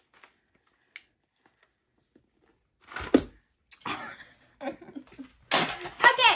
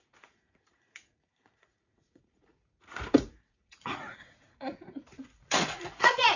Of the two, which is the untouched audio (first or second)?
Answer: first